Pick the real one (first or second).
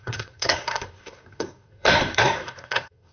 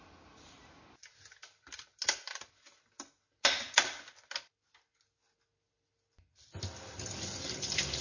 second